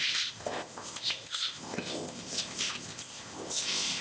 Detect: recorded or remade remade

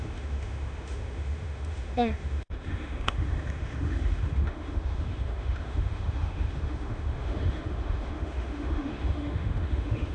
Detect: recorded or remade remade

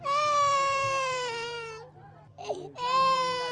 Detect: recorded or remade remade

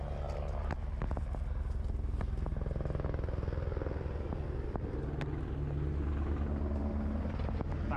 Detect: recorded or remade recorded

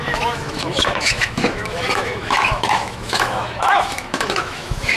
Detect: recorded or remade remade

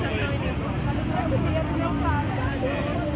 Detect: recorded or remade recorded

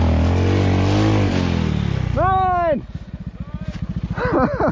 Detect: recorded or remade recorded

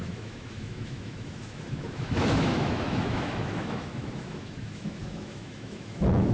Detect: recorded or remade remade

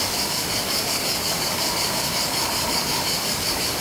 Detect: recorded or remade remade